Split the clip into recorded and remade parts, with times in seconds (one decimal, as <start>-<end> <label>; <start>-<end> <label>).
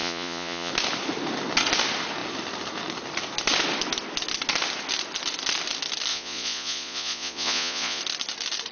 0.0-0.7 remade; 0.7-6.1 recorded; 6.1-8.0 remade; 8.0-8.7 recorded